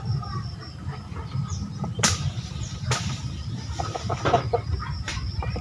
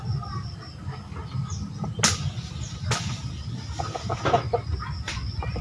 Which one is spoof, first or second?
first